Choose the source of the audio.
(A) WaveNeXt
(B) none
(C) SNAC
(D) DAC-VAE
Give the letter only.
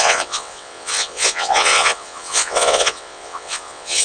A